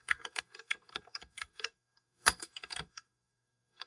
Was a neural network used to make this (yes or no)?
yes